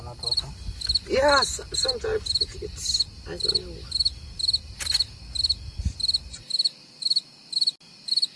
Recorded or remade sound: recorded